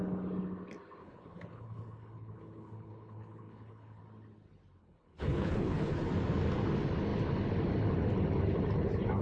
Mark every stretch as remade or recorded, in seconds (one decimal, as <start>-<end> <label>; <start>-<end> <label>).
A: 0.0-1.0 recorded; 1.0-4.0 remade; 4.0-4.8 recorded; 4.8-6.1 remade; 6.1-9.2 recorded

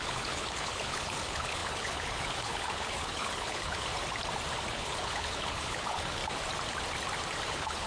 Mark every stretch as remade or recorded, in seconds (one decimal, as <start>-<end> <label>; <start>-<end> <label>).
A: 0.0-3.9 remade; 3.9-4.7 recorded; 4.7-6.2 remade; 6.2-7.5 recorded; 7.5-7.9 remade

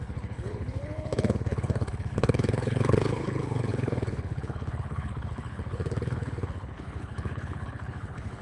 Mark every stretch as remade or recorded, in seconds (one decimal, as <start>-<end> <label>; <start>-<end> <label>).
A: 0.0-8.4 remade

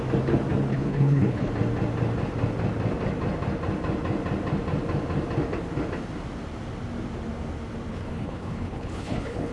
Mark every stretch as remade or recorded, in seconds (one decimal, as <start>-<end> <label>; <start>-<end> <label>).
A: 0.0-0.7 recorded; 0.7-1.5 remade; 1.5-7.9 recorded; 7.9-9.5 remade

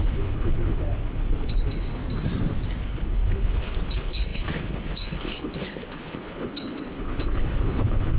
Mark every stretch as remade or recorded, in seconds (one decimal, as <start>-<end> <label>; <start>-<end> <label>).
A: 0.0-2.0 remade; 2.0-2.8 recorded; 2.8-8.2 remade

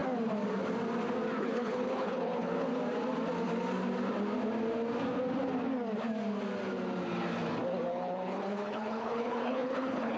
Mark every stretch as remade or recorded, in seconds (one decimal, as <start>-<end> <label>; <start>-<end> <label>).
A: 0.0-1.4 recorded; 1.4-2.7 remade; 2.7-7.9 recorded; 7.9-10.2 remade